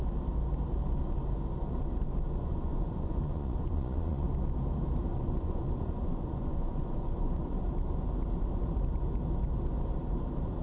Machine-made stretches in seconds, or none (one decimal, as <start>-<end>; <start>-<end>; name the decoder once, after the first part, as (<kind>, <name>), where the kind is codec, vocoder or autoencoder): 2.4-4.3 (vocoder, Vocos); 5.1-7.5